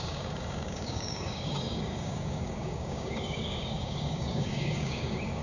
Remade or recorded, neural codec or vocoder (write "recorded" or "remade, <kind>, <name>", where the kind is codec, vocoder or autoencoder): remade, codec, DAC